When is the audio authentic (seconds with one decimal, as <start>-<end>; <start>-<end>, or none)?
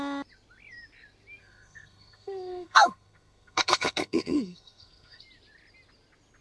0.0-1.4; 5.2-6.4